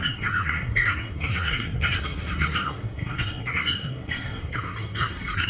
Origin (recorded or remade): remade